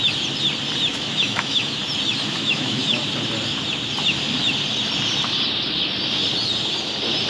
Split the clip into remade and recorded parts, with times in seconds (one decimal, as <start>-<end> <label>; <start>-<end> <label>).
0.0-0.9 recorded; 0.9-1.8 remade; 1.8-2.3 recorded; 2.3-3.0 remade; 3.0-7.3 recorded